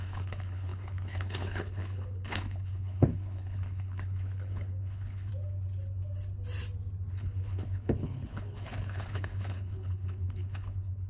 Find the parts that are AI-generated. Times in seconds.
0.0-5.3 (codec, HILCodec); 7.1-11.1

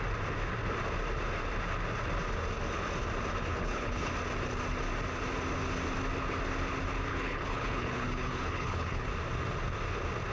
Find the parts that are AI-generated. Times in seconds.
3.5-4.1 (codec, HILCodec); 7.1-9.1